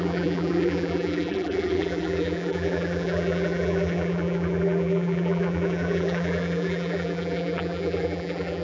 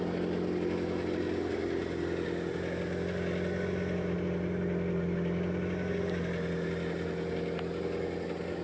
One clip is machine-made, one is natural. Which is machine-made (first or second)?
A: first